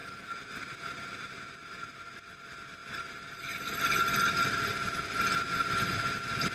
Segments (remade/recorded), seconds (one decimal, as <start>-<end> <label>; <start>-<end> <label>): 0.0-6.5 recorded